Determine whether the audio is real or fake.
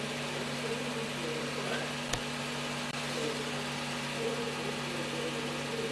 real